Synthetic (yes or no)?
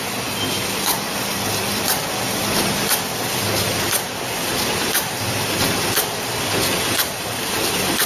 yes